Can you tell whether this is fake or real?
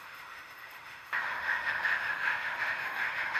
fake